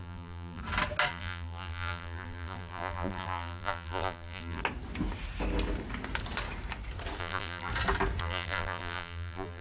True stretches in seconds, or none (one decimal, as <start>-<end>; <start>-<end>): 0.6-1.1; 4.6-7.2; 7.7-8.2

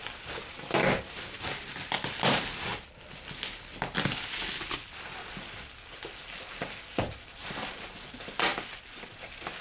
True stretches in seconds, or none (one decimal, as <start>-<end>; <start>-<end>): 0.0-9.6

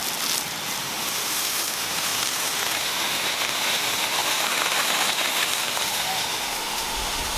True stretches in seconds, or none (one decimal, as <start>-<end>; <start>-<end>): 0.0-0.8

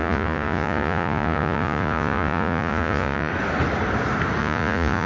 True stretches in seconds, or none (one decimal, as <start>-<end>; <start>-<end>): 3.3-4.4

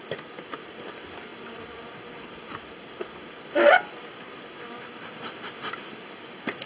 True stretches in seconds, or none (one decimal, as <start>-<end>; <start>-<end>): 0.0-6.7